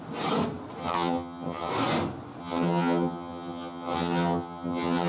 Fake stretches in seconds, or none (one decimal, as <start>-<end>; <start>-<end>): 0.8-1.7; 2.4-5.1